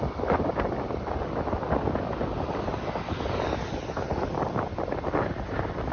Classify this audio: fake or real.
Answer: real